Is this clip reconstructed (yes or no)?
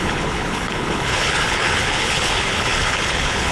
yes